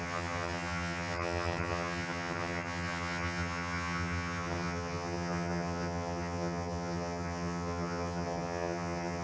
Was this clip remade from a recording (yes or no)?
yes